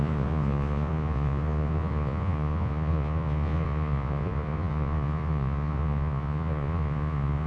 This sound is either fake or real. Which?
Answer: fake